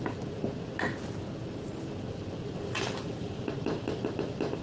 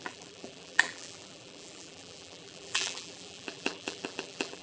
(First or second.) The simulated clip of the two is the second